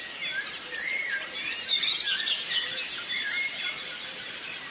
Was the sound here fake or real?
fake